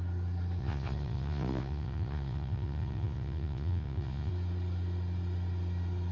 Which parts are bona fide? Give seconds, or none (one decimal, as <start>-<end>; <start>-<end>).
0.0-0.6; 4.3-6.1